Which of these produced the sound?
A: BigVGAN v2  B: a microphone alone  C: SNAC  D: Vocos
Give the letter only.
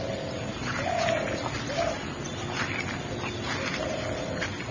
B